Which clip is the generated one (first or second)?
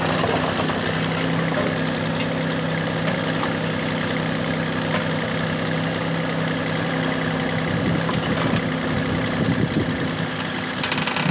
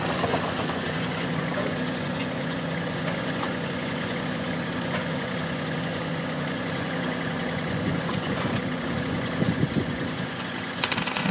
second